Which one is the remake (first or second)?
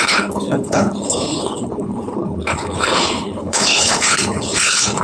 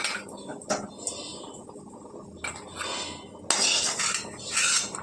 first